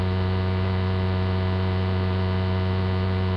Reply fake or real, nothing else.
real